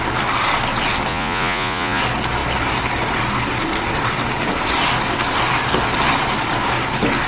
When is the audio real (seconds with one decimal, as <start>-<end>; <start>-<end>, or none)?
0.0-1.1; 2.0-7.3